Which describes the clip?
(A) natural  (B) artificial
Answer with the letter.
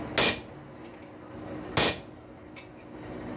A